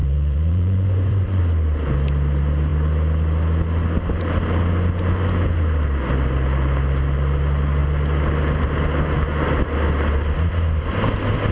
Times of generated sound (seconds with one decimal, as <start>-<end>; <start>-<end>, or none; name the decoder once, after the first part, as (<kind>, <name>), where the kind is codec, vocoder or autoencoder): 0.0-1.4 (vocoder, Vocos)